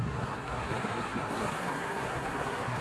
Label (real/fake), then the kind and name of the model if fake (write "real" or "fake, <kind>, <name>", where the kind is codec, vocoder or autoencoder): fake, codec, SNAC